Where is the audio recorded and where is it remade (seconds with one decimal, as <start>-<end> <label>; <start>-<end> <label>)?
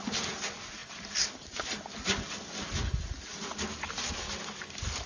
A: 0.0-5.1 recorded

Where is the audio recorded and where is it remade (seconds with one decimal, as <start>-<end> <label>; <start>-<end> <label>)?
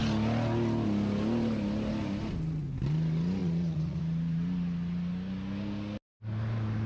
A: 0.0-3.4 recorded; 3.4-4.0 remade; 4.0-6.9 recorded